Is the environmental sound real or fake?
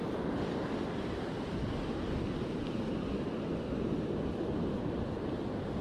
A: real